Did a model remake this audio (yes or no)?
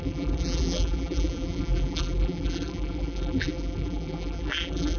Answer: yes